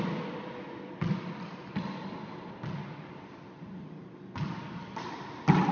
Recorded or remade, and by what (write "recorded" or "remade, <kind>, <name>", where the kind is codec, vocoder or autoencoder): recorded